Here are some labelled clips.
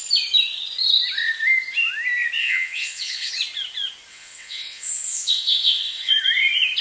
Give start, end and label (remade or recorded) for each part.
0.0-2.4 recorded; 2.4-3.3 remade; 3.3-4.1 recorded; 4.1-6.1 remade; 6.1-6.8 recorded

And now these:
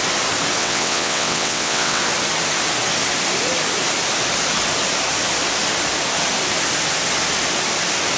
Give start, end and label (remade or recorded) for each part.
0.0-0.6 recorded; 0.6-2.0 remade; 2.0-8.2 recorded

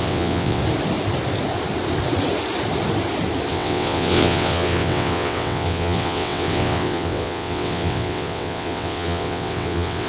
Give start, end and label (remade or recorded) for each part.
0.0-0.6 remade; 0.6-3.5 recorded; 3.5-10.1 remade